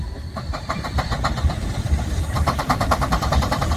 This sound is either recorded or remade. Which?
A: remade